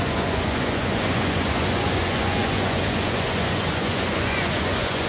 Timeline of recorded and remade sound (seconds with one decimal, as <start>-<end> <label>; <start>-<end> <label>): 0.0-5.1 remade